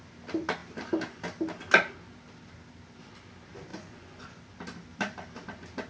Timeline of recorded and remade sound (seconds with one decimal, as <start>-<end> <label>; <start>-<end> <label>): 0.0-3.7 recorded; 3.7-4.4 remade; 4.4-5.9 recorded